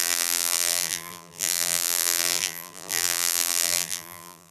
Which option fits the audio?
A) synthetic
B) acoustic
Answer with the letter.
A